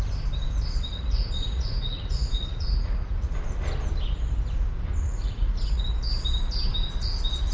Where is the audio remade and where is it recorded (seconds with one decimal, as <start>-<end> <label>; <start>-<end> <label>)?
0.0-0.9 recorded; 0.9-3.3 remade; 3.3-5.0 recorded; 5.0-5.8 remade; 5.8-7.5 recorded